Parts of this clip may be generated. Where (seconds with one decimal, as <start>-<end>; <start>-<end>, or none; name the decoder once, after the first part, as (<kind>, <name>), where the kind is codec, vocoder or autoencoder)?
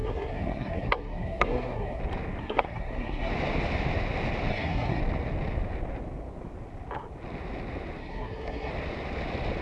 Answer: 0.0-2.0 (codec, SNAC); 2.4-3.3; 4.5-5.0; 8.0-8.7